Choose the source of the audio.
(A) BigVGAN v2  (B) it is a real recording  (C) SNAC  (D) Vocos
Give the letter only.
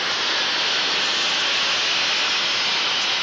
B